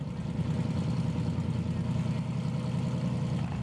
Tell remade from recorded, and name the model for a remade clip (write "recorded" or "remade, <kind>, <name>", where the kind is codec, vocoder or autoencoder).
recorded